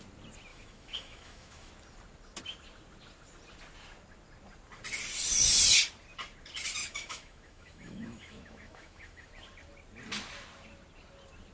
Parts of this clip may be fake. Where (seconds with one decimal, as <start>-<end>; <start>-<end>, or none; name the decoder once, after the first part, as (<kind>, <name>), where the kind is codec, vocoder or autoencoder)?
0.5-1.7 (autoencoder, DAC-VAE); 6.8-9.3